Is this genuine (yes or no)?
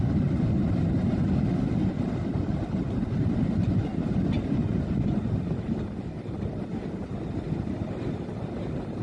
yes